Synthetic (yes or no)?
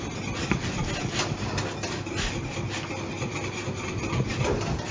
no